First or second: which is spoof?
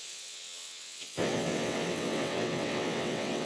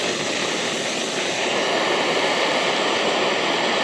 first